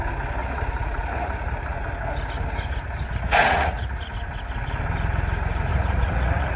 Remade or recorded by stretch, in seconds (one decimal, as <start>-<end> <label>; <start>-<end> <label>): 0.0-0.4 recorded; 0.4-1.9 remade; 1.9-3.1 recorded; 3.1-4.0 remade; 4.0-5.7 recorded; 5.7-6.6 remade